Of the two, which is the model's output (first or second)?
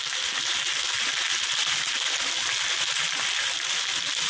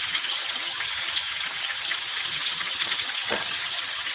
second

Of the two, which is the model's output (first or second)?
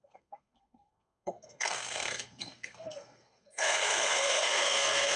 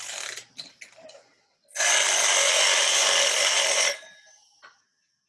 first